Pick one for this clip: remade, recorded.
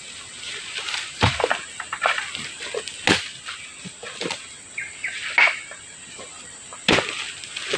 recorded